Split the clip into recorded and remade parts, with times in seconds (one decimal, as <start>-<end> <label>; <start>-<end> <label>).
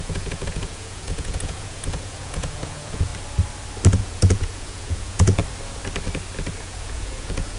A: 0.0-3.1 remade; 3.1-4.0 recorded; 4.0-5.4 remade; 5.4-6.6 recorded; 6.6-7.6 remade